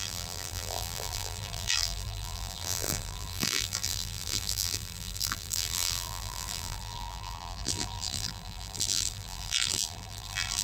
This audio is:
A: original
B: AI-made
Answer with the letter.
B